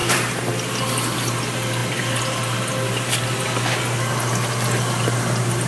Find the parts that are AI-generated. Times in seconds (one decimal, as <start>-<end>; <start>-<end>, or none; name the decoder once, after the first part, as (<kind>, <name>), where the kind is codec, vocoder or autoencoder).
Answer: 0.0-0.5 (vocoder, BigVGAN v2)